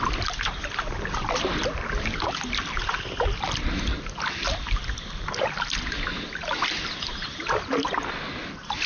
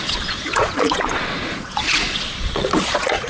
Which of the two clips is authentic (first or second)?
first